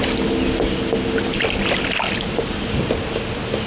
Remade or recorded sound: recorded